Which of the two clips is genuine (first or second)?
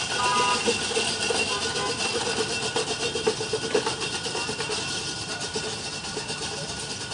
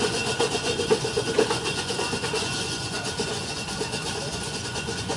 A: first